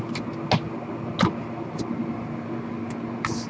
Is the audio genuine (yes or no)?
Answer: yes